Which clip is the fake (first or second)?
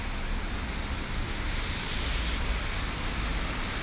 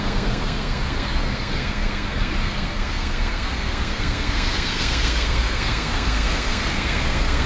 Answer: second